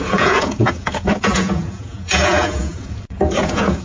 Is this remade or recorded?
remade